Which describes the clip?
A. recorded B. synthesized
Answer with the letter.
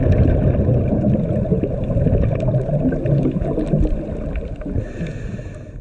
A